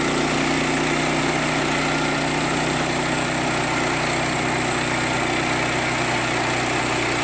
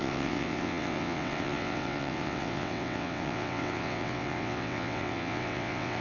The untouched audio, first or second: first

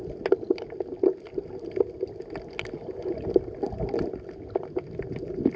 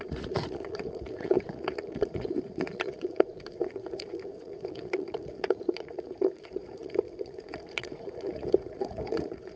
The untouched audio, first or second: first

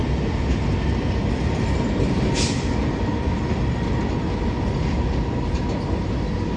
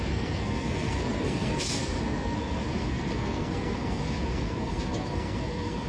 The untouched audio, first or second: first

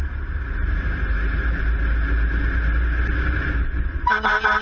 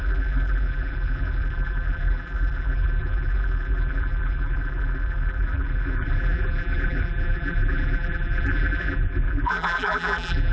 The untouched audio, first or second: first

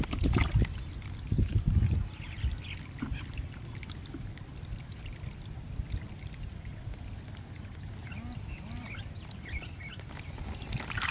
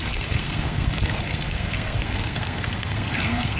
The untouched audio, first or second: first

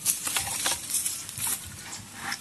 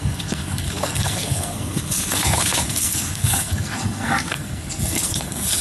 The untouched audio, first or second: first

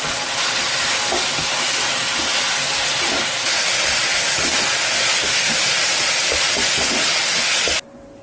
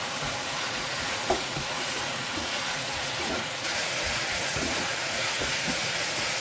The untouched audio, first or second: first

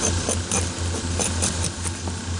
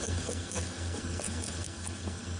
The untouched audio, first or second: first